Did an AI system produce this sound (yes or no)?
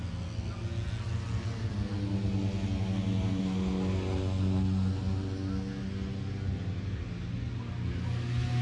no